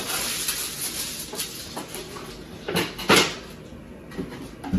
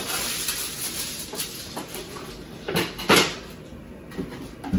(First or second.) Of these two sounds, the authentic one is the first